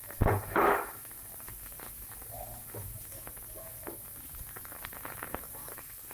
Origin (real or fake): fake